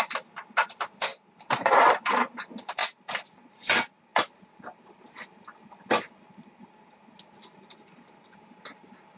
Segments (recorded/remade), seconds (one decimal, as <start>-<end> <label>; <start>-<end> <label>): 0.0-9.2 recorded